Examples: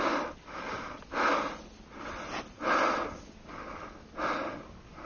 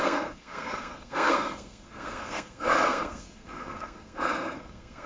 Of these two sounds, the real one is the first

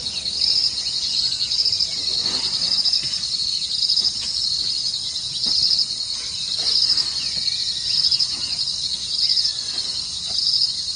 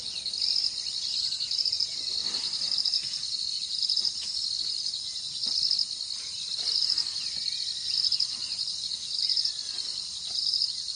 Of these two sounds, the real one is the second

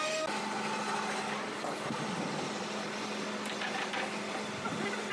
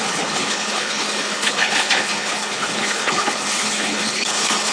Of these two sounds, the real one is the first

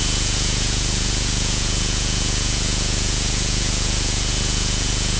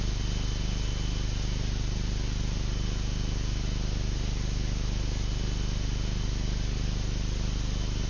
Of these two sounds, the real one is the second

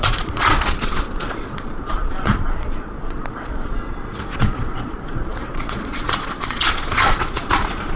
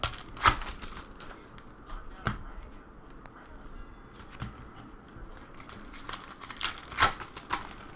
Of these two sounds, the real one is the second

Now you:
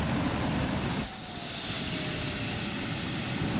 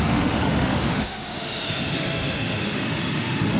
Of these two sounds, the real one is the first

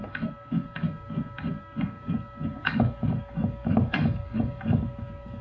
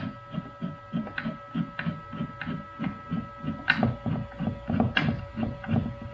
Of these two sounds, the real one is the second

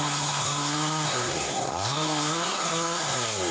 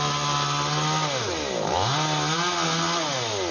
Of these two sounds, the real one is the second